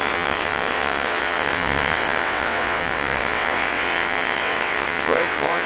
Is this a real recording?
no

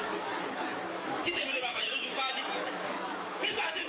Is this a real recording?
no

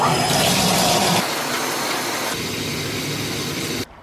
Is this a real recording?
yes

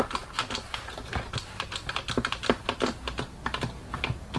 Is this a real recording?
yes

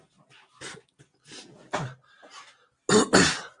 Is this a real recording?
yes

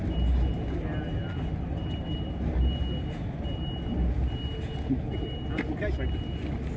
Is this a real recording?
yes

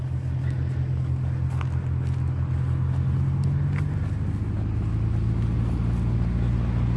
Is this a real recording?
yes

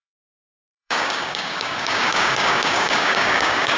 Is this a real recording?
no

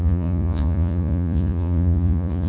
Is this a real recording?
no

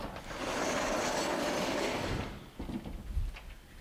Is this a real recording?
yes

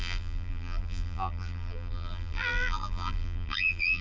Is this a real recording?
no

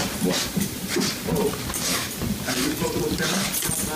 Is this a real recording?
yes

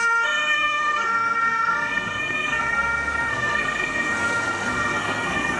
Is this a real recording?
no